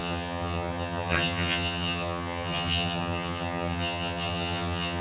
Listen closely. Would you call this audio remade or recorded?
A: remade